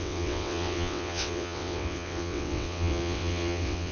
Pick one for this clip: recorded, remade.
remade